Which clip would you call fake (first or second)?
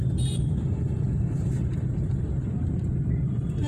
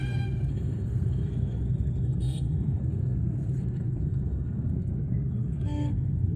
second